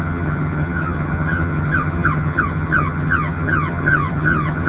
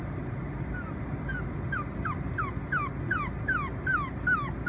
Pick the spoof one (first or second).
first